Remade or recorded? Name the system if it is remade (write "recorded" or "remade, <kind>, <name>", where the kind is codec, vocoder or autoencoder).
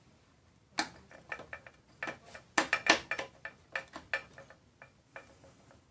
recorded